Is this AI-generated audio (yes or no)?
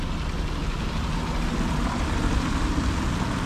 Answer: no